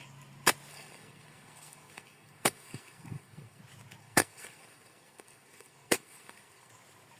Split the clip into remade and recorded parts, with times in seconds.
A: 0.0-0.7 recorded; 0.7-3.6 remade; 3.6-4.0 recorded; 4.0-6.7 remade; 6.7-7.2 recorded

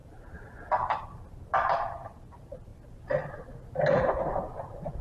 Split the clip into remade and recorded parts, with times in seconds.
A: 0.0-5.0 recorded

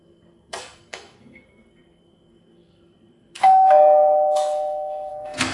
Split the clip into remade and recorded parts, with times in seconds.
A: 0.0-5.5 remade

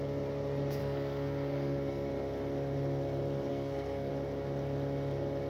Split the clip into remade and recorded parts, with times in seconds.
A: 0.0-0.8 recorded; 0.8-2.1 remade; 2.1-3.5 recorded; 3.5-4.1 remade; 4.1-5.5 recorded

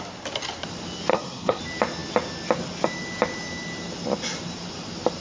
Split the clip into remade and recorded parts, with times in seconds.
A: 0.0-1.1 recorded; 1.1-1.6 remade; 1.6-5.2 recorded